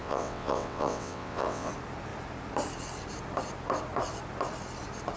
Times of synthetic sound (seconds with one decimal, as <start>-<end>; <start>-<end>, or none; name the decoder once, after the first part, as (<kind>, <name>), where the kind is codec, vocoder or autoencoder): 0.0-1.7 (vocoder, WaveNeXt)